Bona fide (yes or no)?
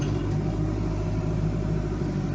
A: no